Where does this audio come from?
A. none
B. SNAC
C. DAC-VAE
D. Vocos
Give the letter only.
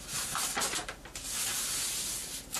A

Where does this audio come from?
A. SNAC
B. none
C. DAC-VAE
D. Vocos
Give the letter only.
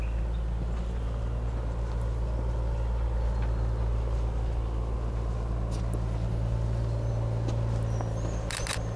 B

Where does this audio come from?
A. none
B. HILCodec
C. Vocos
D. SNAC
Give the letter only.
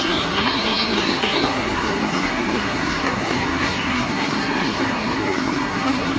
D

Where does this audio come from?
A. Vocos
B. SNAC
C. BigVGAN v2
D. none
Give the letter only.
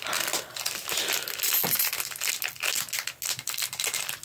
D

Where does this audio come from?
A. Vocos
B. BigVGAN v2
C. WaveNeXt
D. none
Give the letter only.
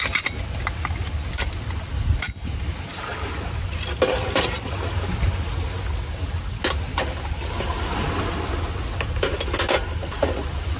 D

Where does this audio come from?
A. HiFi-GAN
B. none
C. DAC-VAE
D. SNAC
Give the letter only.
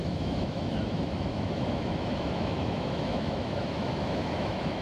C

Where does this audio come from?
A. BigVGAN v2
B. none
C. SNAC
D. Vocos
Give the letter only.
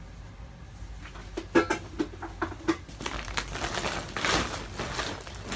B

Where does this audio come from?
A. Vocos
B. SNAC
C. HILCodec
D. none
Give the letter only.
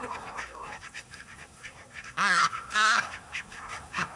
B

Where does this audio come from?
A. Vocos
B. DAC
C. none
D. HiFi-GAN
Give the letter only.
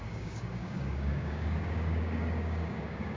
B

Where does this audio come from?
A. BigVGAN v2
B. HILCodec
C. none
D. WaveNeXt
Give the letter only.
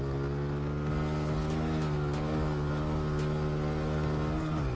C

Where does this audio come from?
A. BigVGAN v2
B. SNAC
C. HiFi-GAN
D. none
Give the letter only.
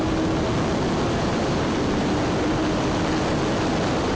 D